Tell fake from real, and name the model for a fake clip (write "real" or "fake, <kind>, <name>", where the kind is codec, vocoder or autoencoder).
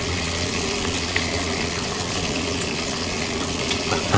fake, vocoder, Vocos